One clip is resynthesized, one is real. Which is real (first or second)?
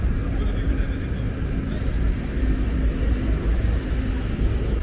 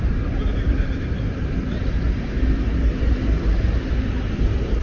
first